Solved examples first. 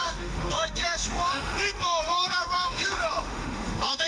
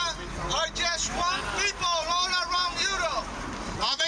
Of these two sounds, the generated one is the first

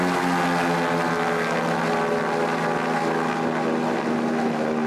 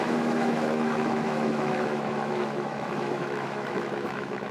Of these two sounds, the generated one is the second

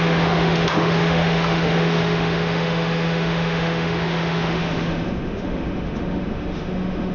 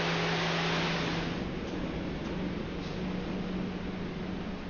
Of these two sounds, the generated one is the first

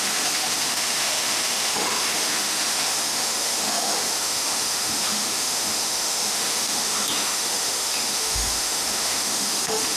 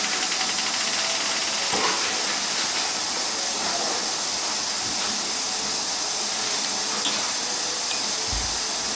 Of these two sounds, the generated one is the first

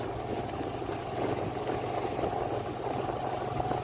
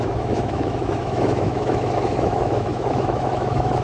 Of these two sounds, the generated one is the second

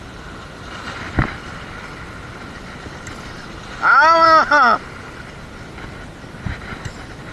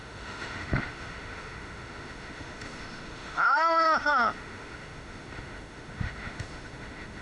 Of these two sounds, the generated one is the second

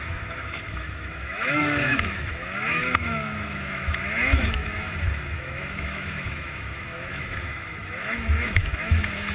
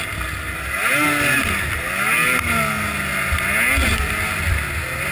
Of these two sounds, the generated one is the first